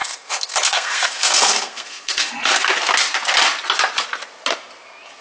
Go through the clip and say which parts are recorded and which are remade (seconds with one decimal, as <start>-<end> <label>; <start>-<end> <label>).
0.0-2.3 remade; 2.3-5.2 recorded